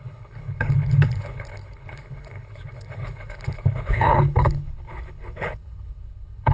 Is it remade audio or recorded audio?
remade